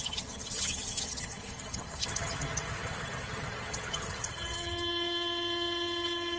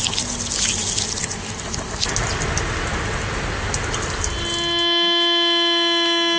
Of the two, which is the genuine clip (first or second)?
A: second